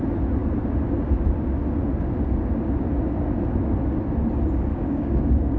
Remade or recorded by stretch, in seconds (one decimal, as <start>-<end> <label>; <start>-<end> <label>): 0.0-4.7 recorded; 4.7-5.6 remade